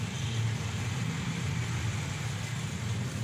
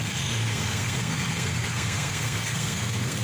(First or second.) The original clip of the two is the first